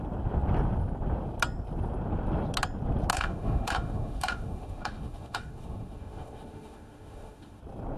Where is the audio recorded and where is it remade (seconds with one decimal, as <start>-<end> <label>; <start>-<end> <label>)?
0.0-3.1 recorded; 3.1-7.6 remade; 7.6-8.0 recorded

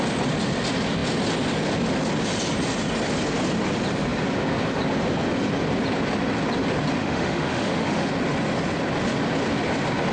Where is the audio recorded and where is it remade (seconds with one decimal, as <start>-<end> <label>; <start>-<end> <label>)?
0.0-7.0 recorded; 7.0-8.1 remade; 8.1-10.1 recorded

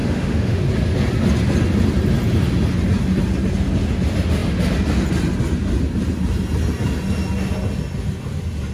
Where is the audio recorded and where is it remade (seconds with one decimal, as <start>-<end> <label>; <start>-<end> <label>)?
0.0-0.6 remade; 0.6-8.7 recorded

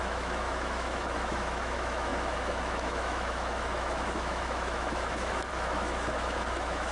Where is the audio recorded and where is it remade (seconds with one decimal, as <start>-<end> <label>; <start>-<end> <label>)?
0.0-6.9 remade

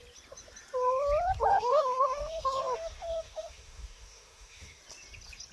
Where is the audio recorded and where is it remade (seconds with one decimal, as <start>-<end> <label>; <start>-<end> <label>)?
0.0-1.5 recorded; 1.5-4.8 remade; 4.8-5.5 recorded

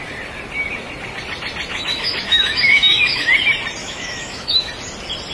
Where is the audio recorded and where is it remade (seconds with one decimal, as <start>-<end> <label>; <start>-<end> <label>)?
0.0-1.7 recorded; 1.7-3.3 remade; 3.3-3.8 recorded; 3.8-4.7 remade; 4.7-5.3 recorded